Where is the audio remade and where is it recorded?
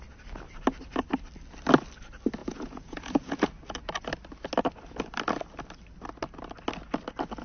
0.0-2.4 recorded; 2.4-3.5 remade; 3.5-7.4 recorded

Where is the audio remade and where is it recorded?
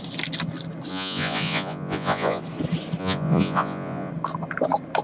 0.0-0.9 recorded; 0.9-2.4 remade; 2.4-3.0 recorded; 3.0-4.1 remade; 4.1-5.0 recorded